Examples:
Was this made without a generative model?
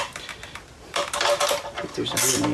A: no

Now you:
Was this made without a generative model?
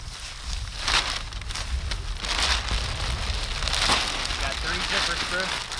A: yes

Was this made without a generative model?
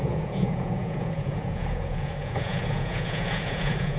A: no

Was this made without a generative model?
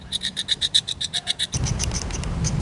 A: yes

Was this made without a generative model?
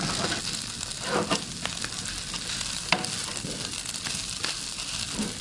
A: yes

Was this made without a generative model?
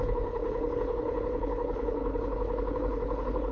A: no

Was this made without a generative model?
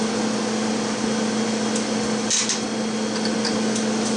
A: yes